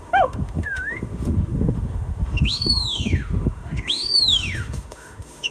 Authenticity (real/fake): fake